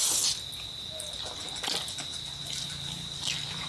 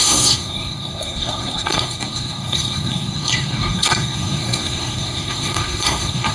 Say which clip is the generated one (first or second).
second